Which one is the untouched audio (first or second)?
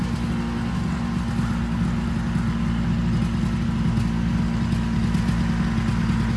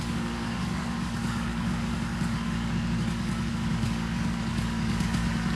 first